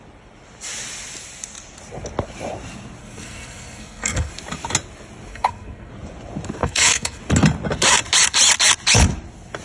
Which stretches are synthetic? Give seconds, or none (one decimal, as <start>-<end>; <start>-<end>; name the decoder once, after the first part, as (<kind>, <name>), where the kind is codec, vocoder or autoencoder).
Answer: 3.0-4.3 (codec, SNAC); 5.3-5.9; 6.6-7.2

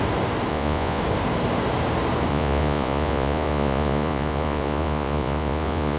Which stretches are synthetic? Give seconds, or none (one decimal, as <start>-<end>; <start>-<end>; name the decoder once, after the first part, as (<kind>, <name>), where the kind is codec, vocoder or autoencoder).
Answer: 0.5-1.0 (vocoder, Vocos); 2.3-6.0

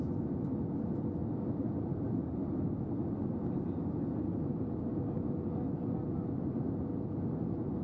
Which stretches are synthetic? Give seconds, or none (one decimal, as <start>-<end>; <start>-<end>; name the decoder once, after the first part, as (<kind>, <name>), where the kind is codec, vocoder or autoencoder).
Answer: none

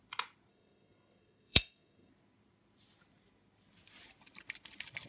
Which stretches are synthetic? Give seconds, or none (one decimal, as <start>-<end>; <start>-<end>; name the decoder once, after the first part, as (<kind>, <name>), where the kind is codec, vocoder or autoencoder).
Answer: 0.5-2.1 (codec, SNAC)

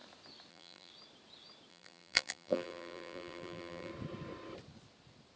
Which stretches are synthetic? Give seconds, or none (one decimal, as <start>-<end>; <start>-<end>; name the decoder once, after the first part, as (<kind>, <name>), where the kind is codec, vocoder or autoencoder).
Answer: 0.5-0.9 (vocoder, BigVGAN v2); 1.7-3.9

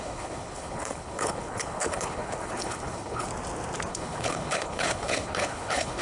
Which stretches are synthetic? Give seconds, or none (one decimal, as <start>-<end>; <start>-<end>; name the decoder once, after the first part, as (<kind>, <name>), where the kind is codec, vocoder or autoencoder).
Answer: 0.0-3.3 (codec, HILCodec); 3.9-6.0